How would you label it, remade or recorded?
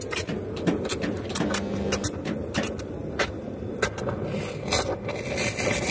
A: recorded